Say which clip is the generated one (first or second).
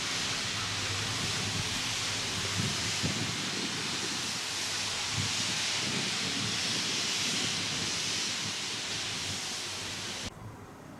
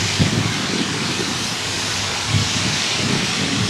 second